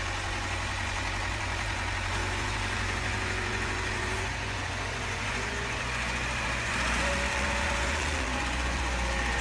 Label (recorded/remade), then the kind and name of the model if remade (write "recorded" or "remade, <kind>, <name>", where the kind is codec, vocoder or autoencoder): remade, vocoder, Vocos